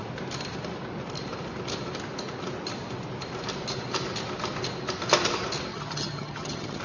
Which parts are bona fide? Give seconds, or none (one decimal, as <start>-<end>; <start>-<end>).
0.0-5.7